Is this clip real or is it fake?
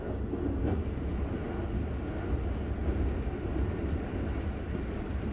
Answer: real